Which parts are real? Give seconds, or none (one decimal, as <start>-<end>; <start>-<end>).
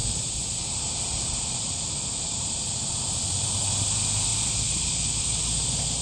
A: 3.6-4.3; 5.2-6.0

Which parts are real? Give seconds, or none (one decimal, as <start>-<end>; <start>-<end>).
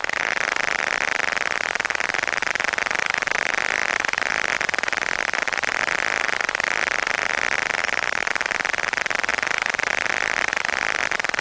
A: 0.0-7.8; 8.3-11.4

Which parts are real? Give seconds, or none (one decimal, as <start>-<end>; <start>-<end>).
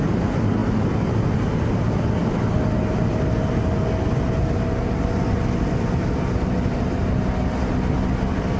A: 0.0-8.6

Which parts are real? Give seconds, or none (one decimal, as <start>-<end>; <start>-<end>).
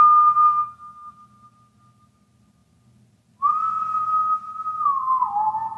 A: 0.0-5.8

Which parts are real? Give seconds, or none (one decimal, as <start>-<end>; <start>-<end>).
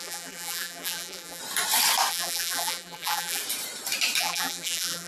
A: 1.4-2.1; 3.4-4.2